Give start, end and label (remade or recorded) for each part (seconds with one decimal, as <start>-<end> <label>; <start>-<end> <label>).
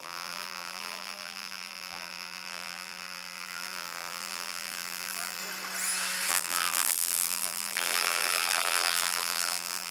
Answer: 0.0-5.4 remade; 5.4-6.3 recorded; 6.3-9.9 remade